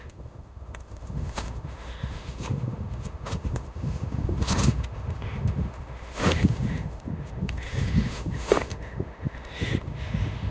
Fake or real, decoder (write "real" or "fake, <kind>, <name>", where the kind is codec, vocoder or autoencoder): fake, autoencoder, DAC-VAE